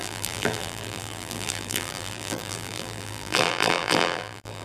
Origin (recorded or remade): remade